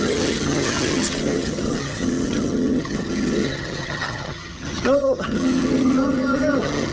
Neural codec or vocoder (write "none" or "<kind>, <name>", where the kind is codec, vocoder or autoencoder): vocoder, HiFi-GAN